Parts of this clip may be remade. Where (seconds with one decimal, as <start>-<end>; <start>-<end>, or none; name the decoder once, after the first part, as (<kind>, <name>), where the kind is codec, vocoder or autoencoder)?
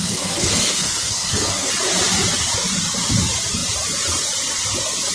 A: 0.0-1.7 (codec, SNAC)